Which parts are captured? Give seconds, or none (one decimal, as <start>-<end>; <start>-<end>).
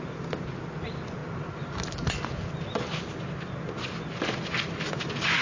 0.0-5.4